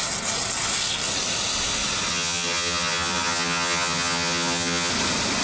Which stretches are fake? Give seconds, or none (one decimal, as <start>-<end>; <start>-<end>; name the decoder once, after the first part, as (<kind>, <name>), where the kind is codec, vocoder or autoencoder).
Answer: 2.1-4.9 (vocoder, HiFi-GAN)